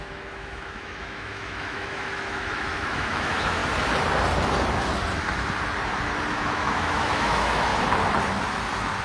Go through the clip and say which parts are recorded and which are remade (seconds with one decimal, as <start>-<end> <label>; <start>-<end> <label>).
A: 0.0-3.6 remade; 3.6-6.3 recorded; 6.3-7.7 remade; 7.7-9.0 recorded

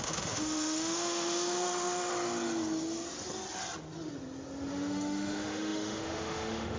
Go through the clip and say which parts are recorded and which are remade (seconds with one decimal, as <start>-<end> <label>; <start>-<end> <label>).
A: 0.0-2.1 remade; 2.1-4.7 recorded; 4.7-6.8 remade

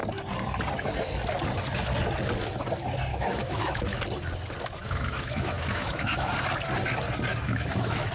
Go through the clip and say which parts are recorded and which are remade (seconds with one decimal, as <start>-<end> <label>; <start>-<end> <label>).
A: 0.0-3.1 recorded; 3.1-4.0 remade; 4.0-4.8 recorded; 4.8-6.3 remade; 6.3-7.3 recorded; 7.3-8.1 remade